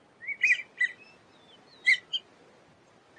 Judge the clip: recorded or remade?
recorded